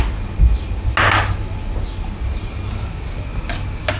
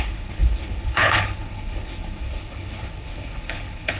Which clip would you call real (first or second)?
first